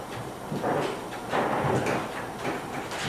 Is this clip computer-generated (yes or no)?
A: no